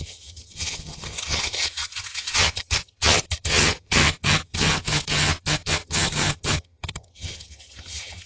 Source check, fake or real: fake